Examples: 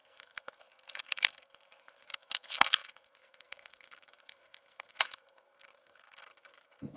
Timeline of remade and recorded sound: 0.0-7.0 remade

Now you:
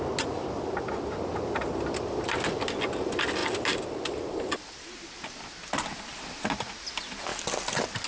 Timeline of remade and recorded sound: 0.0-8.1 recorded

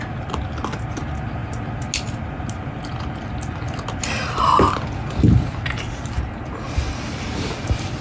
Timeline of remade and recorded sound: 0.0-8.0 recorded

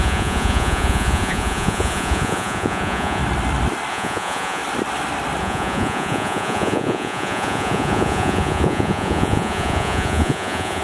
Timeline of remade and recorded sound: 0.0-3.2 remade; 3.2-3.9 recorded; 3.9-4.6 remade; 4.6-5.4 recorded; 5.4-10.8 remade

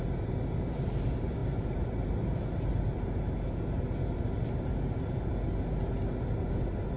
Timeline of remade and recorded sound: 0.0-7.0 recorded

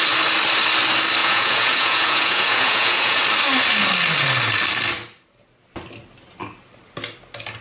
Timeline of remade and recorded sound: 0.0-1.2 recorded; 1.2-3.2 remade; 3.2-7.6 recorded